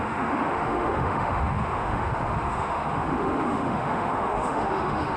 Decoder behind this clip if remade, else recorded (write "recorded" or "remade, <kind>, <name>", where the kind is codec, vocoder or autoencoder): remade, autoencoder, DAC-VAE